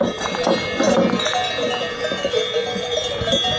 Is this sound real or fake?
real